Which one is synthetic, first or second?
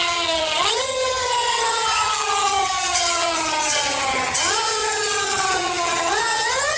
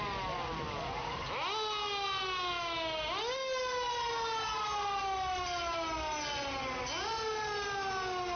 first